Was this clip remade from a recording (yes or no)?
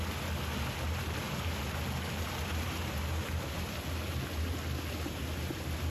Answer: no